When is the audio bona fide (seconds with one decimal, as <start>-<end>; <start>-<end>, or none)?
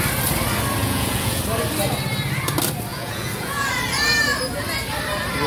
0.0-0.8; 1.4-2.9; 3.7-5.5